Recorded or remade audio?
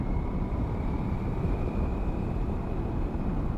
remade